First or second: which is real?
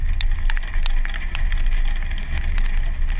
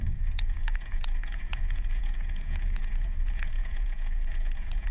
first